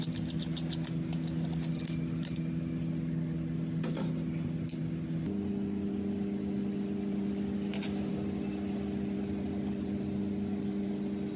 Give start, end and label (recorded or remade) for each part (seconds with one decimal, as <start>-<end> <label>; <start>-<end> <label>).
0.0-11.4 recorded